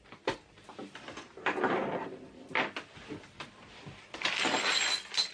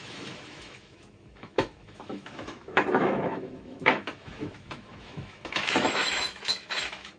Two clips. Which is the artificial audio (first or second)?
second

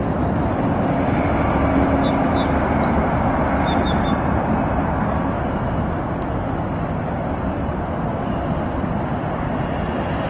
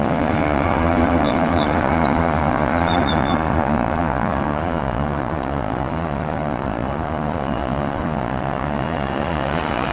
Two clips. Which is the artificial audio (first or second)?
second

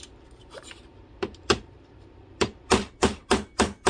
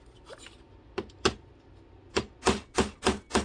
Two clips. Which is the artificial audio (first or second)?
first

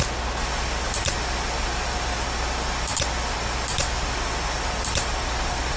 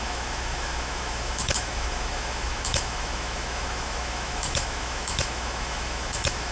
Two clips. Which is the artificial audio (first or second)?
second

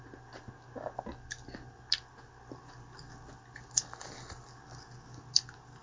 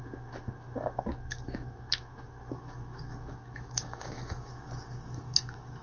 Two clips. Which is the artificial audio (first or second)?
second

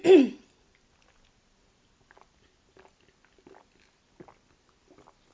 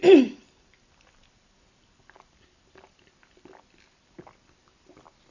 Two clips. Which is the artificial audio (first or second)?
second